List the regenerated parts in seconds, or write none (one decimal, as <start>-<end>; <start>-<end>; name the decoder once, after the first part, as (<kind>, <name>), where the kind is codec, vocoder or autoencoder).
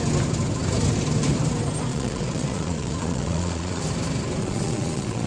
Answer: 1.9-3.8 (vocoder, Vocos); 4.4-5.3